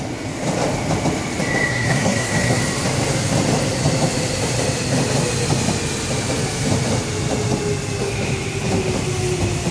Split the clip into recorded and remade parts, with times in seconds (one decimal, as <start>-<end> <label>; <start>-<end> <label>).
0.0-1.7 recorded; 1.7-2.6 remade; 2.6-9.7 recorded